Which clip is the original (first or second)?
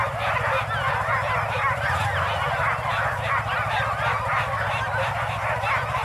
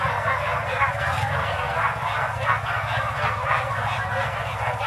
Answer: first